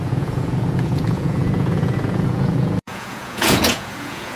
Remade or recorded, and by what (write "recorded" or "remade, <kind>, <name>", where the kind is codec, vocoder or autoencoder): remade, vocoder, Vocos